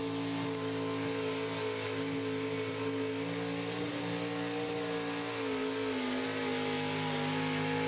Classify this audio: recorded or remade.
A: recorded